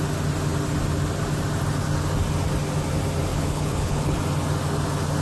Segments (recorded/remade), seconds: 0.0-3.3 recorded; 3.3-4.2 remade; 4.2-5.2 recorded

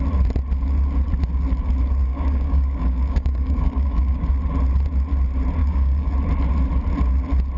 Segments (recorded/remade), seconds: 0.0-2.1 recorded; 2.1-4.3 remade; 4.3-5.6 recorded; 5.6-6.1 remade; 6.1-7.6 recorded

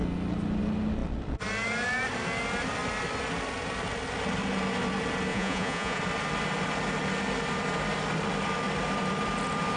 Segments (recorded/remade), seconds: 0.0-5.3 recorded; 5.3-6.0 remade; 6.0-9.8 recorded

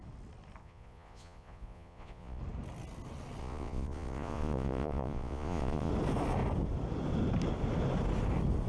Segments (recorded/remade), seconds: 0.0-0.6 recorded; 0.6-2.4 remade; 2.4-3.4 recorded; 3.4-5.9 remade; 5.9-8.7 recorded